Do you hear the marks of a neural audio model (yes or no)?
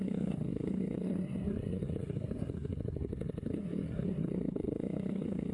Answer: yes